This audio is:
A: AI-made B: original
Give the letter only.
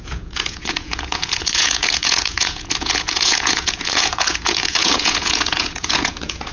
A